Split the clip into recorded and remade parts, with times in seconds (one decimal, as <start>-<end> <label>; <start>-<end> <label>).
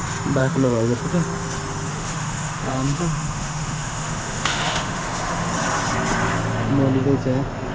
0.0-0.4 recorded; 0.4-1.0 remade; 1.0-1.9 recorded; 1.9-5.5 remade; 5.5-7.7 recorded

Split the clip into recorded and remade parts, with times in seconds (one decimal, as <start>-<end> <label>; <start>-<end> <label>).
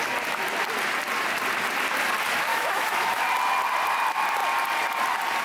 0.0-2.5 recorded; 2.5-3.2 remade; 3.2-5.4 recorded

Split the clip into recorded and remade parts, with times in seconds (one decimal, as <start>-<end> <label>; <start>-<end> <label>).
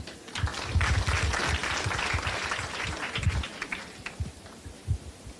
0.0-5.4 recorded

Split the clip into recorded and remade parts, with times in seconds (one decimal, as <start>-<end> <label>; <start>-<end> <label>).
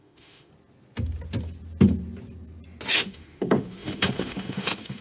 0.0-0.5 remade; 0.5-2.9 recorded; 2.9-5.0 remade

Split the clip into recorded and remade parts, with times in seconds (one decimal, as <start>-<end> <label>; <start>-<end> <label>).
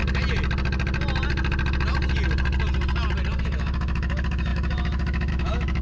0.0-3.4 recorded; 3.4-5.8 remade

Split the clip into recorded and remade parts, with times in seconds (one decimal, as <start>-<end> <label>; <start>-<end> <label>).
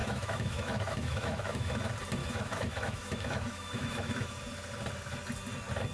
0.0-1.8 remade; 1.8-2.2 recorded; 2.2-4.3 remade; 4.3-5.9 recorded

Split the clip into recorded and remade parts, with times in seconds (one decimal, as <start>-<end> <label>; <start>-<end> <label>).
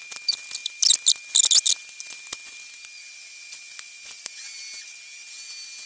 0.0-5.9 recorded